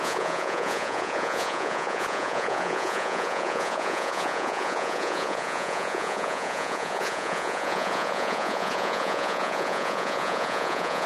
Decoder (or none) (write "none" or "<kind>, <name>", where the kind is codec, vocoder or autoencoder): vocoder, Vocos